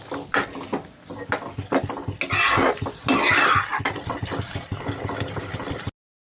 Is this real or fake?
real